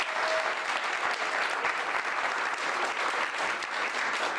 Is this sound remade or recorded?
recorded